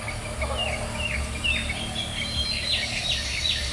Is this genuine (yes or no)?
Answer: yes